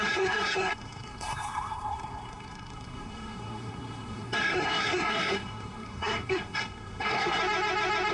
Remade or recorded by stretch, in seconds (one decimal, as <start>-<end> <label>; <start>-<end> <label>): 0.0-7.4 remade; 7.4-8.1 recorded